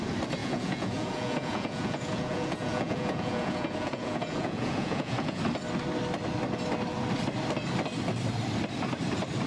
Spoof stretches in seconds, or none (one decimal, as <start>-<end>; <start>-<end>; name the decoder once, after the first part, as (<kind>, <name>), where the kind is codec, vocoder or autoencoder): 0.4-5.4 (vocoder, Vocos)